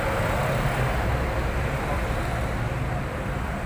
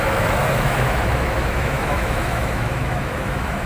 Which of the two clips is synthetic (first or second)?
second